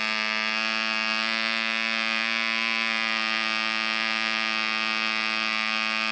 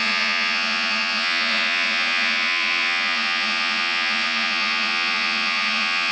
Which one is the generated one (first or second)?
second